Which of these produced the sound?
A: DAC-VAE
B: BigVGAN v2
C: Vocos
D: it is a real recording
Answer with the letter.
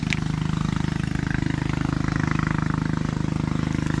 D